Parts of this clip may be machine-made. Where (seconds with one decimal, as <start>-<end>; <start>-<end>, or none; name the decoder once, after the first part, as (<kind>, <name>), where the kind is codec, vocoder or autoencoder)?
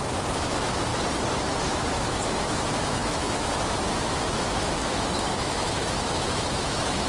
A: 0.0-0.9 (autoencoder, DAC-VAE); 1.9-7.1